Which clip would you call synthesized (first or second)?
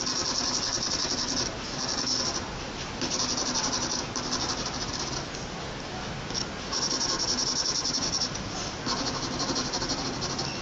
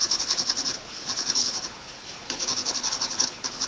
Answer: second